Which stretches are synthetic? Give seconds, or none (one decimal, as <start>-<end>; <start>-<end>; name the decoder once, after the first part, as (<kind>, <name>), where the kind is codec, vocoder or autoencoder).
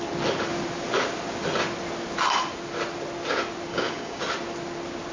3.7-4.2 (codec, DAC)